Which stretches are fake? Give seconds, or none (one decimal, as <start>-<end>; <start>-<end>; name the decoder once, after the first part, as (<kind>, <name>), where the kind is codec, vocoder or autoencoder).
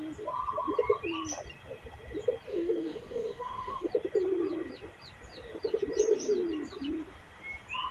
2.5-3.9 (autoencoder, DAC-VAE)